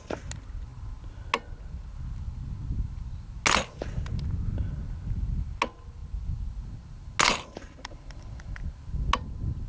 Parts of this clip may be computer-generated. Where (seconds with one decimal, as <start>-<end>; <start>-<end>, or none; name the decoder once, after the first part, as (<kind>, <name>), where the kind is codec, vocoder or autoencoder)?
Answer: none